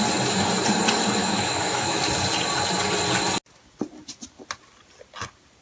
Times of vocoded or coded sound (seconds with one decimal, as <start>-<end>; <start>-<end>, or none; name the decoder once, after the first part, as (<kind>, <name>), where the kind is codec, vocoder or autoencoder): 1.2-2.0 (autoencoder, DAC-VAE)